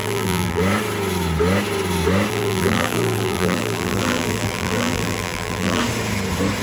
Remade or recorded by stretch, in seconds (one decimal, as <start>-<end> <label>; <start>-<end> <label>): 0.0-0.6 remade; 0.6-2.3 recorded; 2.3-5.8 remade; 5.8-6.6 recorded